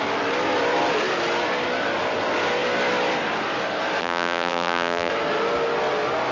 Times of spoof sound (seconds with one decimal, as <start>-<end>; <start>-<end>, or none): 4.0-5.1